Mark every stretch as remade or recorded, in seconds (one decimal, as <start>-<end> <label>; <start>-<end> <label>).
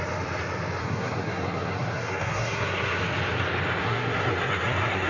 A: 0.0-0.8 recorded; 0.8-3.0 remade; 3.0-3.8 recorded; 3.8-5.1 remade